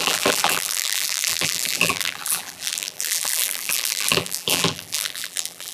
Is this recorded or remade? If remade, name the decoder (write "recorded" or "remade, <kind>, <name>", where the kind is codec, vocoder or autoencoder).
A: remade, vocoder, BigVGAN v2